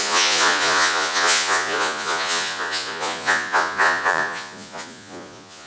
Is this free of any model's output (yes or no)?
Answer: no